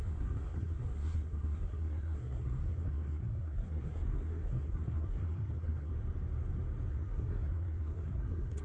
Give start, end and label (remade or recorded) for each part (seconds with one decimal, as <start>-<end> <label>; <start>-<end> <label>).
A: 0.0-5.9 remade; 5.9-6.9 recorded; 6.9-8.6 remade